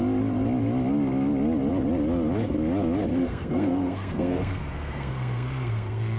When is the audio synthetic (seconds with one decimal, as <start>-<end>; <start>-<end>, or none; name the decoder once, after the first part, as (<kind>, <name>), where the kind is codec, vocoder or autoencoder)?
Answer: 3.1-6.2 (codec, SNAC)